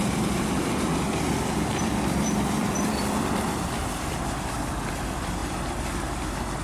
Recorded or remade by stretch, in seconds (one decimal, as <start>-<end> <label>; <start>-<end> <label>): 0.0-5.4 remade; 5.4-6.6 recorded